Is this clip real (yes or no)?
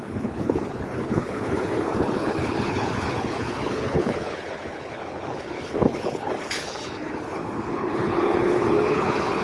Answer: no